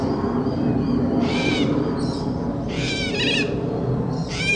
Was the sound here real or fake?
real